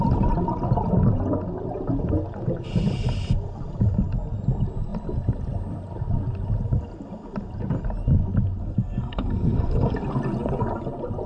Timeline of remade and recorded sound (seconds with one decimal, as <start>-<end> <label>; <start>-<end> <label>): 0.0-8.6 recorded; 8.6-9.9 remade; 9.9-11.3 recorded